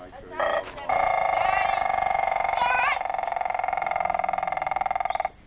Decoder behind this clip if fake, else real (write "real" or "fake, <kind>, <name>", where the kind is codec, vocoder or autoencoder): real